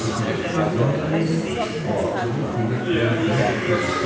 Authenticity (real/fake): real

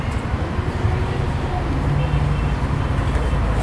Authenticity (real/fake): real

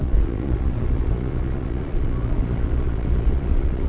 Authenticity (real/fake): fake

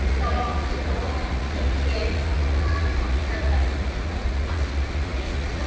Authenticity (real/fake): fake